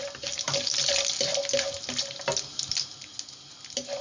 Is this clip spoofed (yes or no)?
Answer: no